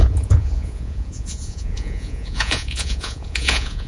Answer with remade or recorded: remade